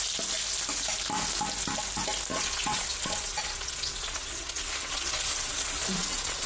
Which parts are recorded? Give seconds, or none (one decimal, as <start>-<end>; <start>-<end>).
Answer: 0.0-2.3

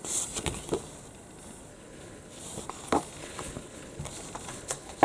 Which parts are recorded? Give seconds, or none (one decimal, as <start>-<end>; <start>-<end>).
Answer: 0.0-1.7; 2.4-3.2; 4.0-4.5

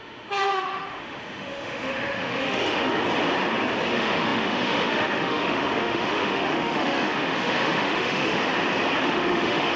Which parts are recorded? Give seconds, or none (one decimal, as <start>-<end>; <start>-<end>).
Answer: 3.0-3.9; 8.4-9.0

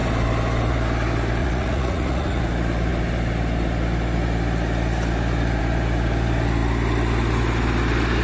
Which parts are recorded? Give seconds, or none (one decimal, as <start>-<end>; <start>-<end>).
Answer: 0.0-1.4; 2.4-8.2

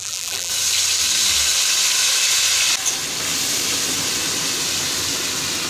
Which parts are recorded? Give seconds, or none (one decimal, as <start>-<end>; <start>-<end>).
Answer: 0.5-5.7

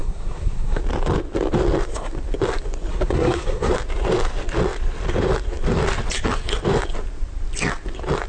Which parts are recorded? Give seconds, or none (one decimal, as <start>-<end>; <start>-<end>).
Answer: 0.8-2.9; 3.7-8.3

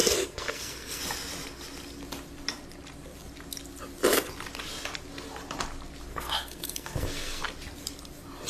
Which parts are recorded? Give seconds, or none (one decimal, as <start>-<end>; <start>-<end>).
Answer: 1.0-6.1; 7.4-8.5